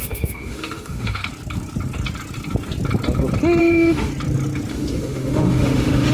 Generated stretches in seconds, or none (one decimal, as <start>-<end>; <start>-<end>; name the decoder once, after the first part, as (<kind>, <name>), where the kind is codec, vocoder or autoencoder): 0.0-1.2 (autoencoder, DAC-VAE); 3.6-4.1; 4.7-6.1